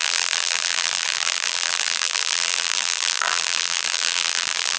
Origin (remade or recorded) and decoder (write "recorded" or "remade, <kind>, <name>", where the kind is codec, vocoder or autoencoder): remade, vocoder, BigVGAN v2